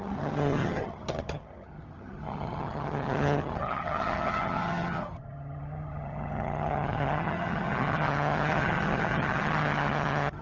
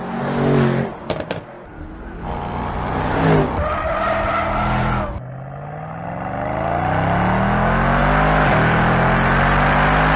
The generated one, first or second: first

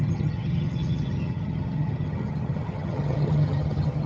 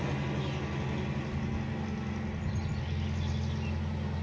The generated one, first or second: first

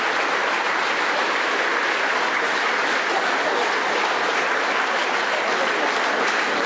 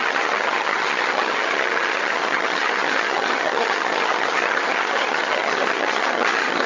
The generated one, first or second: second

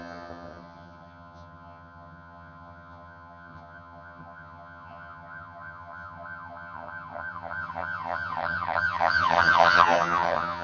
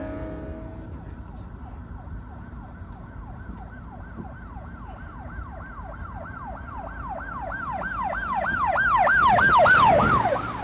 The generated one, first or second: first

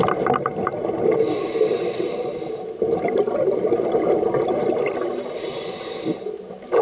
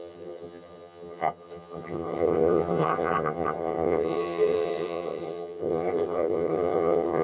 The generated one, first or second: second